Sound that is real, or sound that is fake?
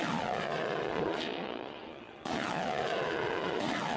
fake